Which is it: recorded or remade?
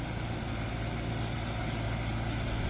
recorded